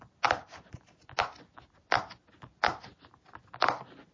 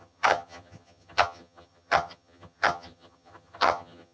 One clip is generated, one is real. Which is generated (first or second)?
second